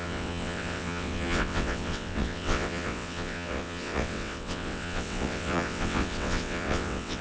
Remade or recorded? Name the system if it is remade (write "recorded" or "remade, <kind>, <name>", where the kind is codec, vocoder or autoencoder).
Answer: remade, vocoder, WaveNeXt